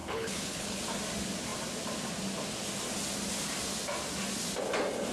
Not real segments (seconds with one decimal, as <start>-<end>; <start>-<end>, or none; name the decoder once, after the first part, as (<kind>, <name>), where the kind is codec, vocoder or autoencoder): 0.0-0.8 (codec, HILCodec)